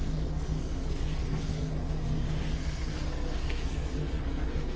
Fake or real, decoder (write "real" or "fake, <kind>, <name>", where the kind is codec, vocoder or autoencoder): fake, codec, SNAC